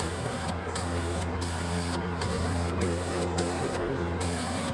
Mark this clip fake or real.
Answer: fake